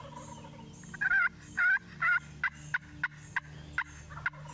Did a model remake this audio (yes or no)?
no